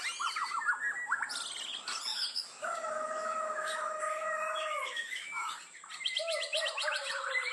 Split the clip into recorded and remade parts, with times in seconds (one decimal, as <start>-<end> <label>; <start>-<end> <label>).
0.0-2.1 recorded; 2.1-5.6 remade; 5.6-7.5 recorded